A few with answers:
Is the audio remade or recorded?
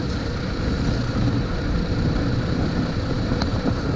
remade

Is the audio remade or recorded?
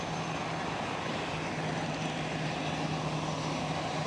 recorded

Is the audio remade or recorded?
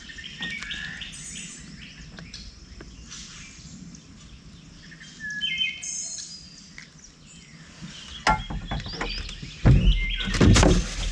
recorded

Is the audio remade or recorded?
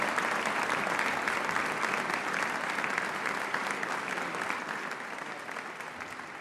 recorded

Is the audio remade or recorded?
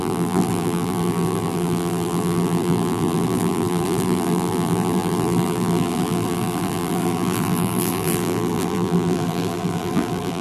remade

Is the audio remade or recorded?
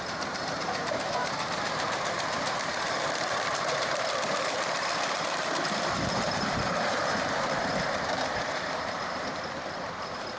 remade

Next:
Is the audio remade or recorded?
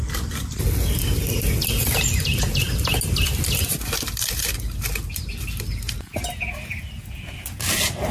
recorded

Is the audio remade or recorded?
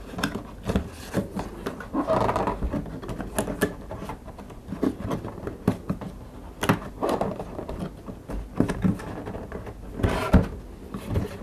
recorded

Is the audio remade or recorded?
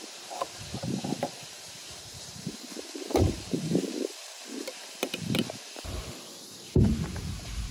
remade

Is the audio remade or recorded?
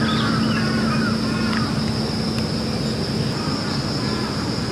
recorded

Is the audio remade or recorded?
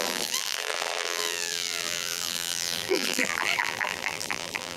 remade